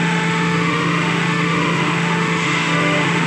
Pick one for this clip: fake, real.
fake